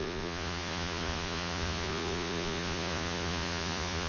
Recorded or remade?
remade